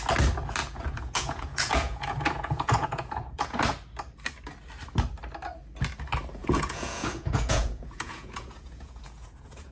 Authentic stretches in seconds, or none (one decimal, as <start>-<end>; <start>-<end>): 0.0-0.6; 3.6-6.4